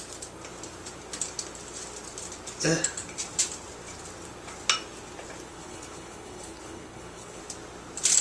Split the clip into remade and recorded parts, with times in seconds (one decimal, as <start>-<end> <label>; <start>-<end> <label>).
0.0-5.5 recorded; 5.5-7.4 remade; 7.4-8.2 recorded